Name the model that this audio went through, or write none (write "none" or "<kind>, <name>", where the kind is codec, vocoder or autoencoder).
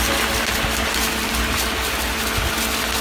none